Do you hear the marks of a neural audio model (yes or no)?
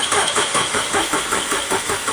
yes